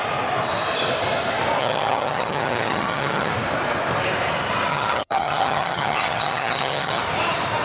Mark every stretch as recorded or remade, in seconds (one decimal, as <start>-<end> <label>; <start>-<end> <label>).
0.0-1.6 recorded; 1.6-3.3 remade; 3.3-4.7 recorded; 4.7-7.0 remade; 7.0-7.6 recorded